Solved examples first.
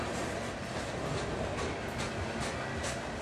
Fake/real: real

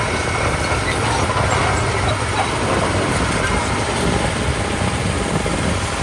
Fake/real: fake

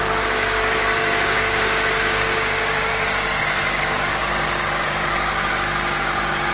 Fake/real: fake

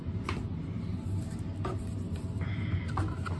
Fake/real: real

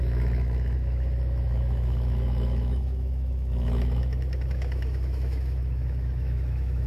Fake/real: fake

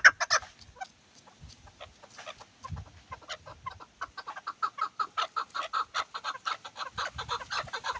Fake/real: real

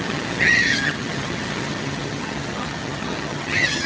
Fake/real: fake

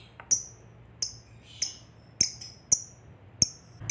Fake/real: real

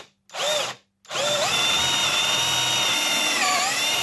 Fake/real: real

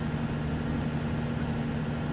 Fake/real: real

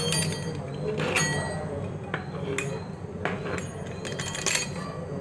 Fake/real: real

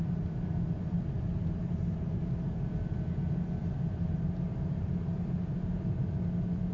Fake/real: real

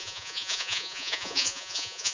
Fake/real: fake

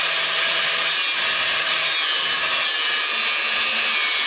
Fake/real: real